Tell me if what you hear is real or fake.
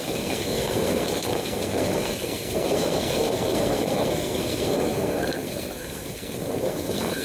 fake